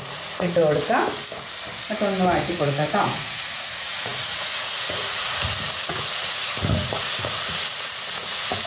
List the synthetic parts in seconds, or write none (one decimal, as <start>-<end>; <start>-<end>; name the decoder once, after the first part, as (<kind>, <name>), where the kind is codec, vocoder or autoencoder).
0.0-0.6 (vocoder, Vocos); 2.5-8.7